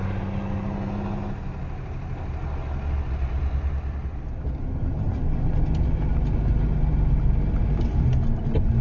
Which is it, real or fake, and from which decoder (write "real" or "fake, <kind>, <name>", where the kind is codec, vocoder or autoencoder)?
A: real